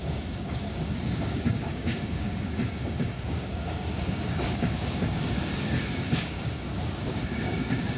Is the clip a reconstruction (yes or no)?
yes